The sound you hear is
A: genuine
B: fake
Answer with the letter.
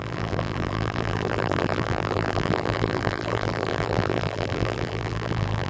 B